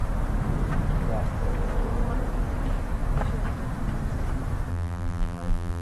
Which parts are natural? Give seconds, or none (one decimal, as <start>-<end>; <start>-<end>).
0.0-4.7